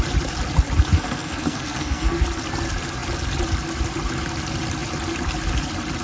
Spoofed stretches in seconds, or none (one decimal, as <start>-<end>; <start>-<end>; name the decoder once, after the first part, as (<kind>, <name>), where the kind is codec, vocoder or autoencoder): 0.9-2.2 (codec, SNAC)